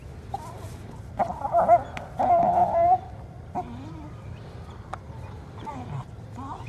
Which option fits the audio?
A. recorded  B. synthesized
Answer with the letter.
A